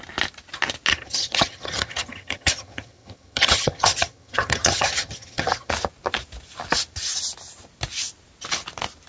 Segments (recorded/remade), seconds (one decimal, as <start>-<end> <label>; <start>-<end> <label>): 0.0-0.9 recorded; 0.9-5.7 remade; 5.7-9.1 recorded